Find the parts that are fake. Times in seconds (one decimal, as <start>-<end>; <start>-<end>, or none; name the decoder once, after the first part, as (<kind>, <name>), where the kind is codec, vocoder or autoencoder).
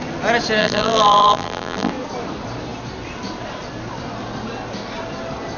0.6-1.9 (vocoder, BigVGAN v2)